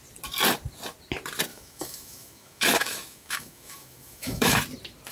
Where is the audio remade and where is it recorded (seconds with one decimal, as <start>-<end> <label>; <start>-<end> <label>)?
0.0-1.5 recorded; 1.5-4.6 remade; 4.6-5.1 recorded